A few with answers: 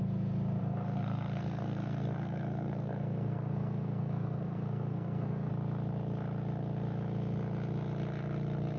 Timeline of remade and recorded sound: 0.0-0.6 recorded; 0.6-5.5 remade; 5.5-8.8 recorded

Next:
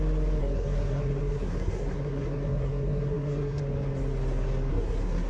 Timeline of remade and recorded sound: 0.0-0.4 recorded; 0.4-3.6 remade; 3.6-4.7 recorded; 4.7-5.3 remade

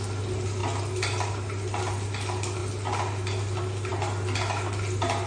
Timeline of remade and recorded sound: 0.0-5.3 recorded

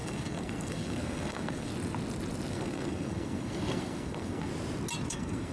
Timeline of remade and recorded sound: 0.0-1.7 remade; 1.7-2.5 recorded; 2.5-4.5 remade; 4.5-5.1 recorded; 5.1-5.5 remade